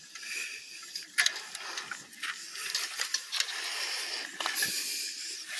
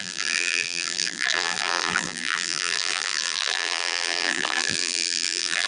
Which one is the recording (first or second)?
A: first